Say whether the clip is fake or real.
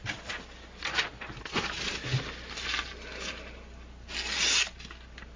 real